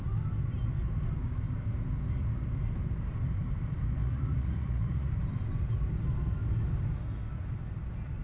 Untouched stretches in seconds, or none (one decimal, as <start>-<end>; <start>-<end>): 0.0-4.0; 5.1-8.2